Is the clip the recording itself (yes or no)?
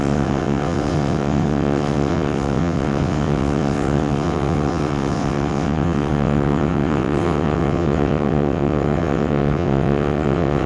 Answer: no